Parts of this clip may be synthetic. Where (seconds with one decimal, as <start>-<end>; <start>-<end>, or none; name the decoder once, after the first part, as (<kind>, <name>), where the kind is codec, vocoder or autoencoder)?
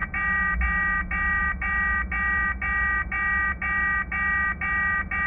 none